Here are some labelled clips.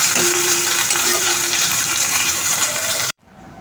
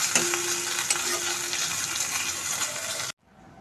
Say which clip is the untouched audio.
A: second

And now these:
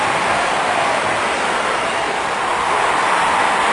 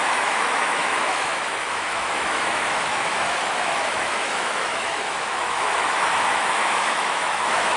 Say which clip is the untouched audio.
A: first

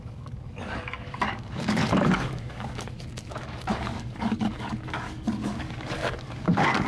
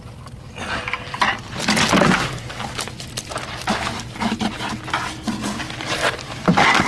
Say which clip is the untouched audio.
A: second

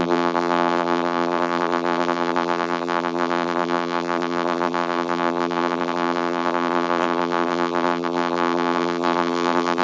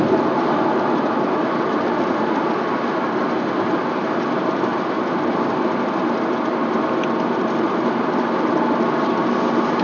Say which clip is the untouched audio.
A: second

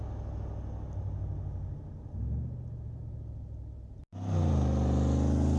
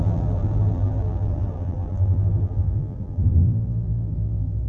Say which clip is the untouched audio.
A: first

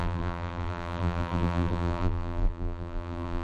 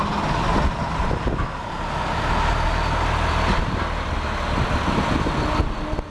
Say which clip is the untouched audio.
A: second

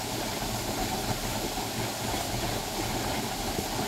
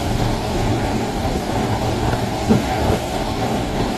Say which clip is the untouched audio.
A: first